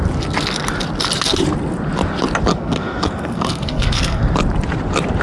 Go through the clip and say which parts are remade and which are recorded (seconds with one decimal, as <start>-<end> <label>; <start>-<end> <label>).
0.0-2.5 recorded; 2.5-4.2 remade; 4.2-5.2 recorded